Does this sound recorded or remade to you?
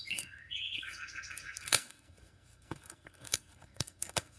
remade